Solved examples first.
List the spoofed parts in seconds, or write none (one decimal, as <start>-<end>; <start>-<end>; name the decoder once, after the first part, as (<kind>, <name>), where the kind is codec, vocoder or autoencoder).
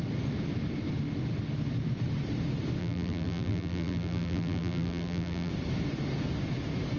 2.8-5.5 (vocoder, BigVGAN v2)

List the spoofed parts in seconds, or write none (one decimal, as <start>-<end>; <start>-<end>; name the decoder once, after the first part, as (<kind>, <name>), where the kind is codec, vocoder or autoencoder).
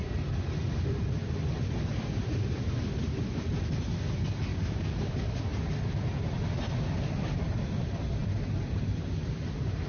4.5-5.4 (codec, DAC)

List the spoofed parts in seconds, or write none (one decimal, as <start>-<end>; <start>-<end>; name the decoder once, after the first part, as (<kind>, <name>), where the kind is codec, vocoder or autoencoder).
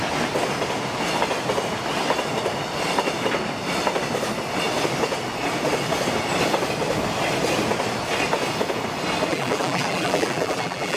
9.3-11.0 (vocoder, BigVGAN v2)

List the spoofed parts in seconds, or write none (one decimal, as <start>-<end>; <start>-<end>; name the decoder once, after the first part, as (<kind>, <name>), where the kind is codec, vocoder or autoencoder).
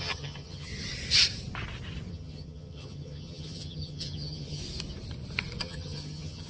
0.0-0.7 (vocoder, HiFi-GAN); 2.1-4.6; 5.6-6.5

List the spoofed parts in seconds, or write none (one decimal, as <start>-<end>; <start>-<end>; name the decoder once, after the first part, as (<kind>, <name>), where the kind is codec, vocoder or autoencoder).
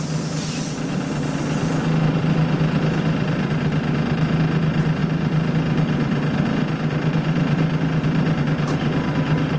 1.8-3.6 (vocoder, BigVGAN v2); 5.0-8.4